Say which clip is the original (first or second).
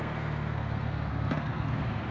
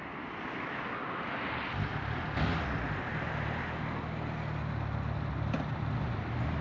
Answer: second